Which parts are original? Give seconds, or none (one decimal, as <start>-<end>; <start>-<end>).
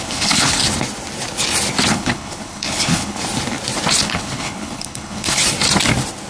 0.6-1.9; 3.2-4.0; 5.4-6.3